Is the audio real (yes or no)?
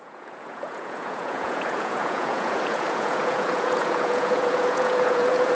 no